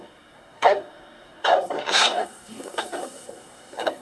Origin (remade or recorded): remade